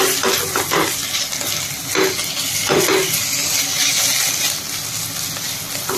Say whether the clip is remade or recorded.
recorded